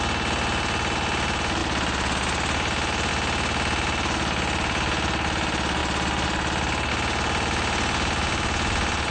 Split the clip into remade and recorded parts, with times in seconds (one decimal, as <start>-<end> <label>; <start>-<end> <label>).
0.0-9.1 recorded